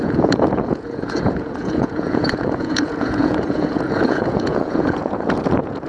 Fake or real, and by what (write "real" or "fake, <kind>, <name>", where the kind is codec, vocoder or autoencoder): fake, vocoder, Vocos